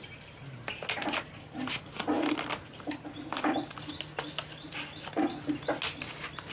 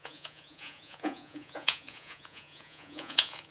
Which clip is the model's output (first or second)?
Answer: second